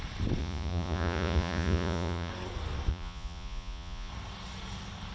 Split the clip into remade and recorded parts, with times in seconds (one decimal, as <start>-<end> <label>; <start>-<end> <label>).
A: 0.0-0.4 recorded; 0.4-2.3 remade; 2.3-2.9 recorded; 2.9-4.1 remade; 4.1-5.1 recorded